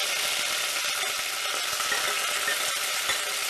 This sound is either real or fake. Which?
real